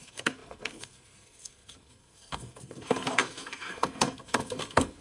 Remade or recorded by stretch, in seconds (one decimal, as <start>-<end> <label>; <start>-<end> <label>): 0.0-5.0 remade